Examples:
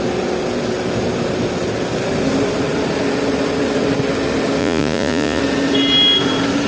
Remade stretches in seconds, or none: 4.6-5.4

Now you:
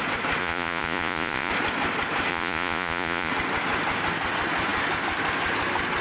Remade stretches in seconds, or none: 0.4-1.5; 2.3-3.3

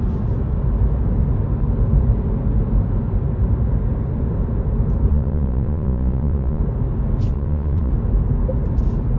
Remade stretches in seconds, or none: 5.1-6.6; 7.3-7.9

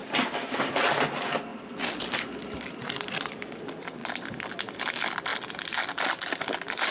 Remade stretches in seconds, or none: none

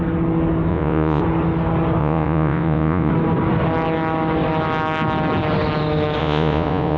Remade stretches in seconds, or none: 0.7-1.2; 2.0-3.1; 6.2-7.0

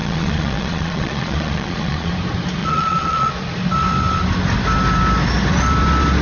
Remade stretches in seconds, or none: 0.0-2.1; 2.6-3.3